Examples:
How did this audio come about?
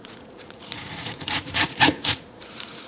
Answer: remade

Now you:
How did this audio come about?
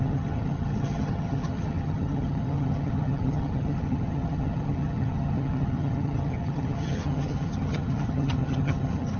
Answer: remade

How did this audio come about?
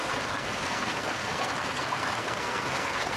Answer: remade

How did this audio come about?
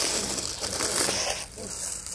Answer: recorded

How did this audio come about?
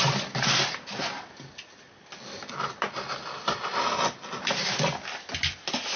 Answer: recorded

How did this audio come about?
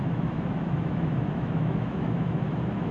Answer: remade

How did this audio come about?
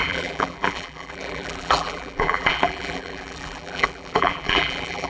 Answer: remade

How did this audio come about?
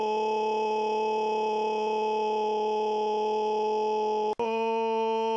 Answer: recorded